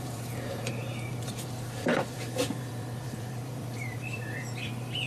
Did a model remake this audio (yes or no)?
yes